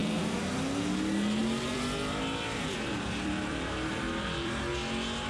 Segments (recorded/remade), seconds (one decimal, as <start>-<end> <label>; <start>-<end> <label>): 0.0-0.5 remade; 0.5-1.4 recorded; 1.4-4.6 remade; 4.6-5.3 recorded